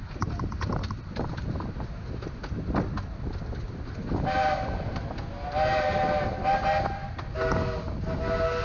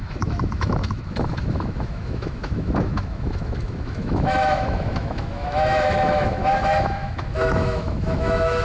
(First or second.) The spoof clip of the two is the second